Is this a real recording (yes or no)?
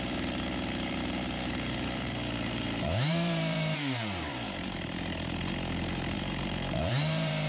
no